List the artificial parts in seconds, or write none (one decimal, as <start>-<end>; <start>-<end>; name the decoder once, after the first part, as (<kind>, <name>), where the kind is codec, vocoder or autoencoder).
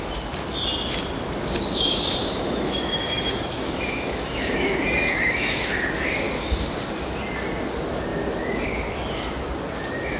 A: 2.2-5.8 (autoencoder, DAC-VAE)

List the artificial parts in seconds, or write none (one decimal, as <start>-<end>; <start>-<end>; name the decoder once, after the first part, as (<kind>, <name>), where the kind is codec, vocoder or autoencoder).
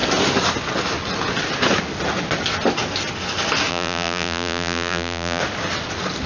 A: 3.7-5.4 (vocoder, BigVGAN v2)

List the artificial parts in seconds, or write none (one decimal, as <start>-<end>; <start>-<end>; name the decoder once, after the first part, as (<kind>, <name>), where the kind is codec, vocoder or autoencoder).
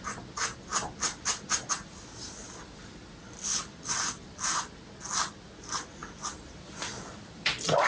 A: 0.7-1.6 (vocoder, BigVGAN v2); 6.0-7.9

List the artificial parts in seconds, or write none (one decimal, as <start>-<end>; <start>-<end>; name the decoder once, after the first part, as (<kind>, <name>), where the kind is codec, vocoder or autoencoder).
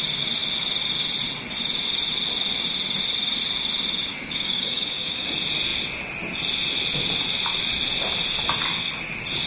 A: 4.1-5.3 (codec, DAC)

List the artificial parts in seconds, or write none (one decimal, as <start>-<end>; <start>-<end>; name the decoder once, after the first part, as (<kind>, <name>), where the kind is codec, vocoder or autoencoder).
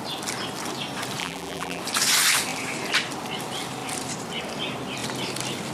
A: 1.2-1.8 (vocoder, BigVGAN v2)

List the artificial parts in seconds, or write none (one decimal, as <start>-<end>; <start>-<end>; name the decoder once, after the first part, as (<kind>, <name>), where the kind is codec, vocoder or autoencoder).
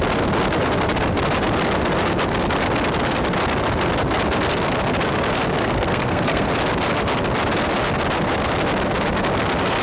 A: 5.6-6.5 (codec, SNAC)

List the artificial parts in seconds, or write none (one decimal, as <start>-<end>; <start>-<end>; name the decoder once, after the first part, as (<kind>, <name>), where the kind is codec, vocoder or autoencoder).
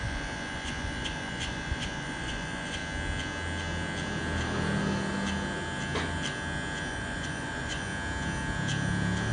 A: 0.0-2.8 (vocoder, Vocos); 6.9-7.9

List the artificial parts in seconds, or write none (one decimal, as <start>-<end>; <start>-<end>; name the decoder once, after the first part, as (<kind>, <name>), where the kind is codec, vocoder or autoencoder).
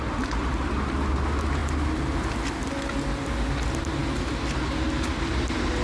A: none